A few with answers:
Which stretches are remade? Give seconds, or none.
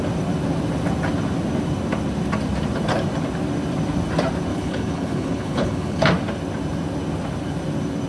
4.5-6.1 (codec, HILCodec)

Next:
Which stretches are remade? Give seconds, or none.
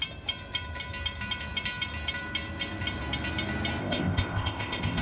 3.8-5.0 (codec, ZipCodec)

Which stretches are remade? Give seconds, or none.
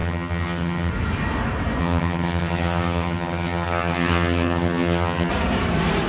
0.0-0.9 (vocoder, HiFi-GAN); 1.8-5.3